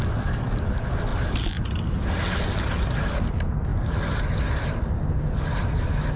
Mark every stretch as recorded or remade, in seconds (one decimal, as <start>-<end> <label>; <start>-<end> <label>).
0.0-1.1 recorded; 1.1-2.2 remade; 2.2-6.2 recorded